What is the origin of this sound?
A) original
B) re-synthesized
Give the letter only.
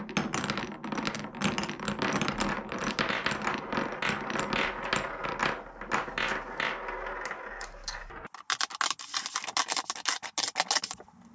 A